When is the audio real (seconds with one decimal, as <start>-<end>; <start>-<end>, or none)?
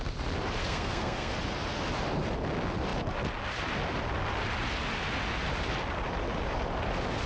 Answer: 0.0-0.6; 1.3-7.3